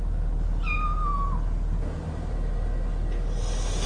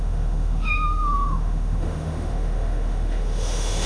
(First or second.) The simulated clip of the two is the second